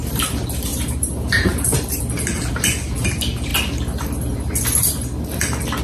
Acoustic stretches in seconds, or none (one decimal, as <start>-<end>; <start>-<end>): 0.0-0.7; 2.0-5.8